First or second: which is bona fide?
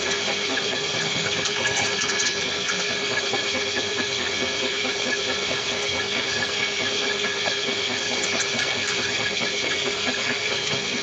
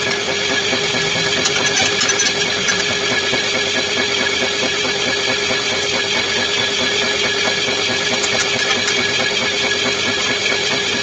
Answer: second